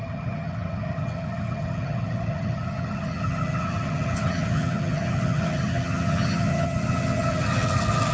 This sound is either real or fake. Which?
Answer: fake